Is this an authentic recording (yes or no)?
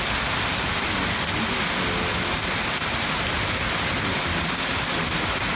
yes